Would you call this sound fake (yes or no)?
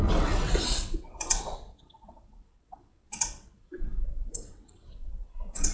yes